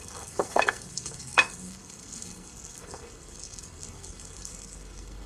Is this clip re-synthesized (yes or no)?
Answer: yes